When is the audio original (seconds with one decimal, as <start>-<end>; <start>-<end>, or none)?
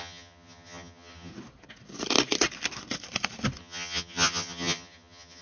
1.3-3.6